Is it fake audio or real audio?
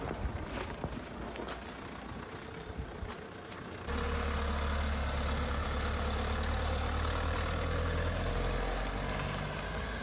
real